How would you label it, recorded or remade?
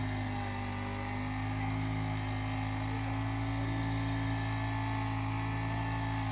recorded